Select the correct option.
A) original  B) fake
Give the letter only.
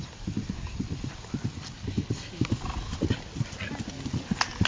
A